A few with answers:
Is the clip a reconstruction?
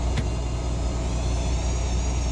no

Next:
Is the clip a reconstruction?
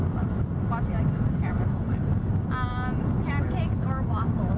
no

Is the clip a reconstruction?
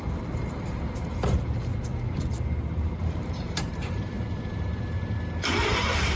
yes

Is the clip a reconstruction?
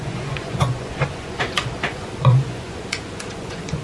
yes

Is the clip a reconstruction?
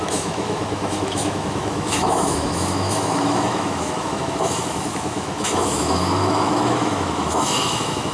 yes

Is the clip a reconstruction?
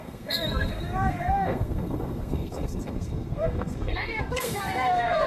yes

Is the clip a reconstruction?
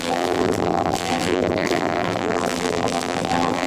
yes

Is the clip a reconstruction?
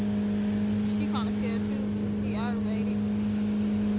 no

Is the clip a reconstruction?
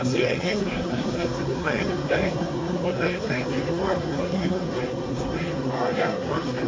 yes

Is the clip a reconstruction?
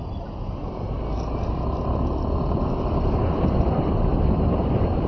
no